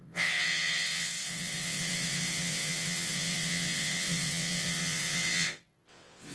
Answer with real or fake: fake